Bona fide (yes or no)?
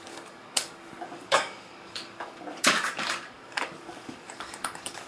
no